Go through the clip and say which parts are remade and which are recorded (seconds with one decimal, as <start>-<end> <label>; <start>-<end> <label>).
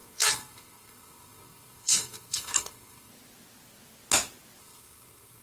0.0-3.1 remade; 3.1-4.6 recorded; 4.6-5.4 remade